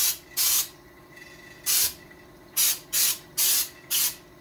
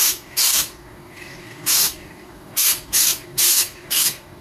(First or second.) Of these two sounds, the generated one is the second